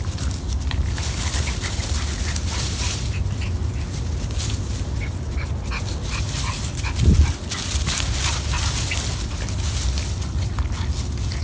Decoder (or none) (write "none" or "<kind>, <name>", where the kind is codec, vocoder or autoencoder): none